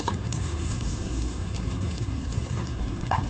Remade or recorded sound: remade